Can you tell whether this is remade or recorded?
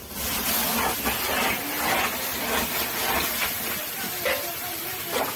recorded